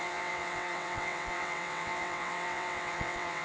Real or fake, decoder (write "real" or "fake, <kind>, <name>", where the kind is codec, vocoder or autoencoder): fake, vocoder, WaveNeXt